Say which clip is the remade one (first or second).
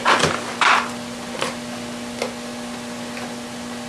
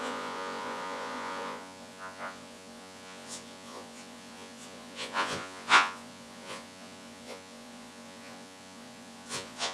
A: second